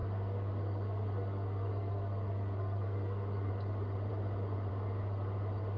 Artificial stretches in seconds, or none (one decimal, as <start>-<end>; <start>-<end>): 0.0-3.5